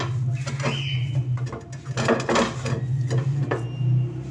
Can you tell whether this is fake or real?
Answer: real